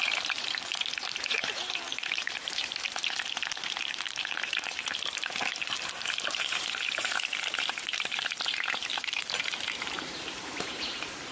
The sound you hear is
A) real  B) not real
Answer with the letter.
B